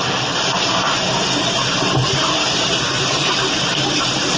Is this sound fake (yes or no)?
yes